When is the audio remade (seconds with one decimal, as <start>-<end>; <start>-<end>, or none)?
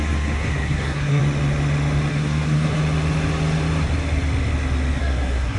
0.0-1.2; 2.1-2.8; 5.0-5.6